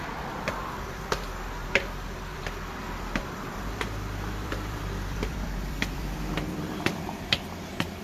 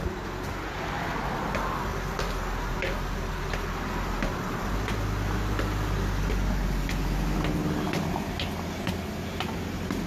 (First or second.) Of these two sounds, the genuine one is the second